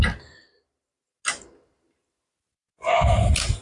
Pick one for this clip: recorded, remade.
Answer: recorded